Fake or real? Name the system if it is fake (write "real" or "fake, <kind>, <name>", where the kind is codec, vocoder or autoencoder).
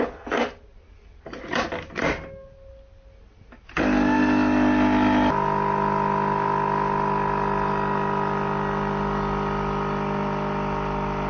real